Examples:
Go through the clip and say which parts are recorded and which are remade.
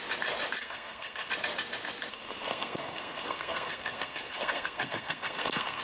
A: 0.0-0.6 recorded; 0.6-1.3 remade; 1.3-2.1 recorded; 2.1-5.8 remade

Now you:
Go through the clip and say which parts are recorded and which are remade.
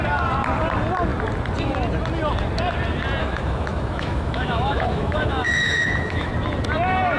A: 0.0-3.2 recorded; 3.2-6.3 remade; 6.3-7.2 recorded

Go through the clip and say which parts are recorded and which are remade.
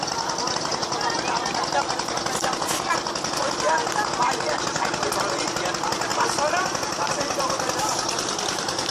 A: 0.0-8.9 recorded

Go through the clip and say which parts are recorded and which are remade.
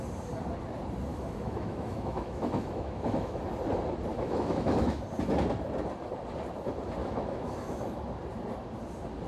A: 0.0-1.1 recorded; 1.1-3.4 remade; 3.4-4.1 recorded; 4.1-5.0 remade; 5.0-7.0 recorded; 7.0-8.0 remade; 8.0-9.3 recorded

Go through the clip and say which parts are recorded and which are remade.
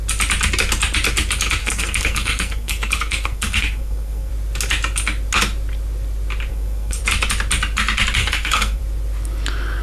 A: 0.0-1.6 recorded; 1.6-4.3 remade; 4.3-6.5 recorded; 6.5-7.0 remade; 7.0-8.2 recorded; 8.2-8.8 remade; 8.8-9.8 recorded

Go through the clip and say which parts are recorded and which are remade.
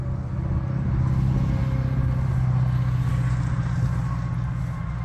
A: 0.0-5.0 recorded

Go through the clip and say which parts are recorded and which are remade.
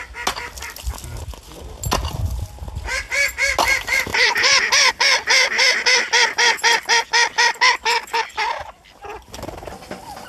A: 0.0-4.1 recorded; 4.1-4.9 remade; 4.9-10.3 recorded